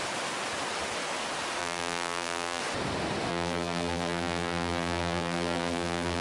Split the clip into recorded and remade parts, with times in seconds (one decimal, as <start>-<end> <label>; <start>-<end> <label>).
0.0-1.6 recorded; 1.6-2.6 remade; 2.6-3.3 recorded; 3.3-6.2 remade